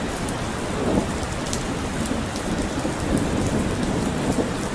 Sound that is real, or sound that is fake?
real